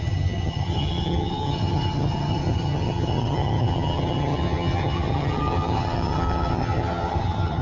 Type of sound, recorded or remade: remade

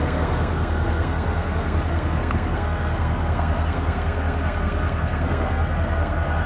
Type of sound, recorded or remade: remade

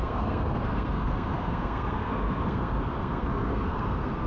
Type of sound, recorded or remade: remade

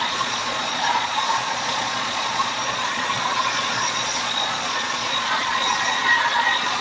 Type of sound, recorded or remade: remade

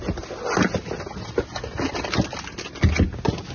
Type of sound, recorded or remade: recorded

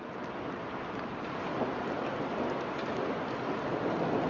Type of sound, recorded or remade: recorded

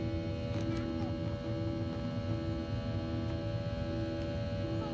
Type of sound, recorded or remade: recorded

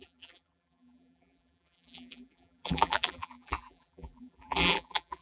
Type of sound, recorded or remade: remade